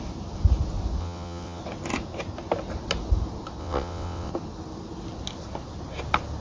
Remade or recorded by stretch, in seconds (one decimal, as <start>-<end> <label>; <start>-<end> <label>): 0.0-1.0 recorded; 1.0-1.6 remade; 1.6-3.6 recorded; 3.6-4.3 remade; 4.3-6.4 recorded